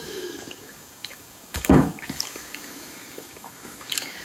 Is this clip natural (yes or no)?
no